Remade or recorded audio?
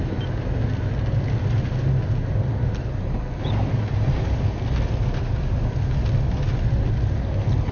recorded